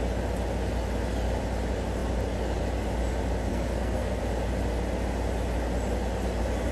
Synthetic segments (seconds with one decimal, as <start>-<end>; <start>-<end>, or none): 3.5-4.2